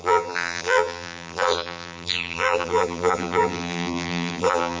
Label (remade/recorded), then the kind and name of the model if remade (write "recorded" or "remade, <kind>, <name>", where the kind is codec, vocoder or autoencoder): remade, vocoder, BigVGAN v2